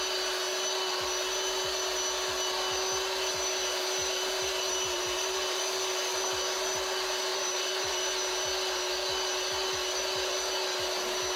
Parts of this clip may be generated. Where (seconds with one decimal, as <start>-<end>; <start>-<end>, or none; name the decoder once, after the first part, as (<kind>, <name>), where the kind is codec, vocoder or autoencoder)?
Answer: 4.0-5.6 (vocoder, BigVGAN v2); 7.3-8.0